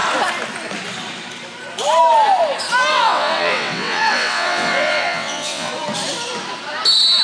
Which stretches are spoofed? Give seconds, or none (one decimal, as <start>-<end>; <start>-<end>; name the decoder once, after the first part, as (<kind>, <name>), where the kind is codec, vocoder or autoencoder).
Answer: 2.9-5.7 (vocoder, WaveNeXt)